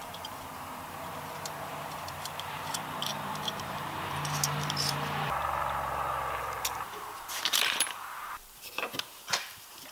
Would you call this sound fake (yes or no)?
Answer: yes